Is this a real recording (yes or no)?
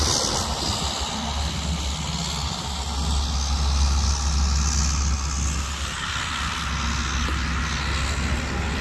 yes